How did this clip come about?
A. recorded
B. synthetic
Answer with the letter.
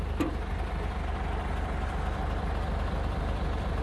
A